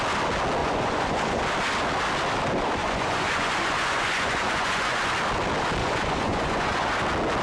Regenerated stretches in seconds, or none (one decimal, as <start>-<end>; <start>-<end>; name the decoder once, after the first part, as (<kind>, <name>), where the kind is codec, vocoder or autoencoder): 0.6-1.4 (vocoder, Vocos); 2.8-5.1; 5.8-6.9